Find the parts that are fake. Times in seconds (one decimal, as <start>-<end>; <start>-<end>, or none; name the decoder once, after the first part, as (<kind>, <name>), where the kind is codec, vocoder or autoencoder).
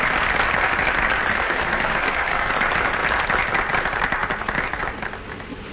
1.3-2.5 (codec, SNAC)